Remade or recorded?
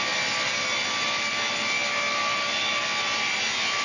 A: recorded